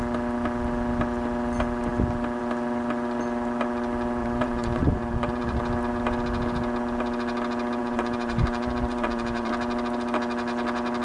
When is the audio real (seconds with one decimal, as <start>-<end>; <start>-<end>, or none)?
0.0-4.2; 5.6-7.8; 9.5-11.0